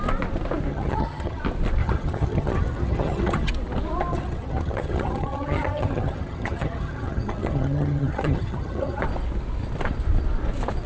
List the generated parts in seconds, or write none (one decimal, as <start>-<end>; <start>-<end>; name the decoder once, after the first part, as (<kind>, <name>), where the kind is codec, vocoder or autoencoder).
0.7-1.4 (vocoder, HiFi-GAN); 1.8-3.5; 4.1-9.0